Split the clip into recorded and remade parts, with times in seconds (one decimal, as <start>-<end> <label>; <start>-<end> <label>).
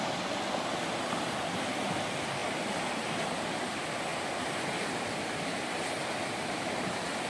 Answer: 0.0-7.3 recorded